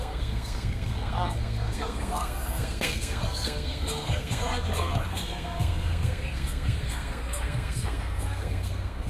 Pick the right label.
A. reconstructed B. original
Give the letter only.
A